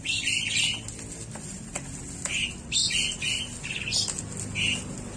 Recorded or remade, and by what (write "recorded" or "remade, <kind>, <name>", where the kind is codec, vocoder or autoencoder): recorded